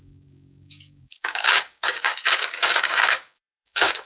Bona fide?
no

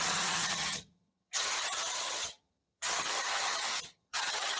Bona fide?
no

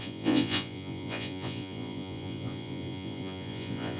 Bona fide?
no